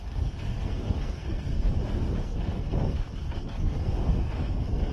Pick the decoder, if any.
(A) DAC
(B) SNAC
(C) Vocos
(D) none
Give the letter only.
B